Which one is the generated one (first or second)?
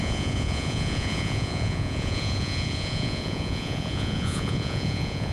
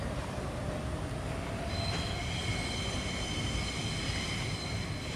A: first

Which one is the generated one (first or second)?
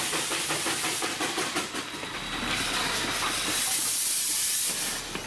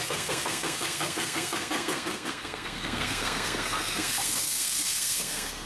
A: second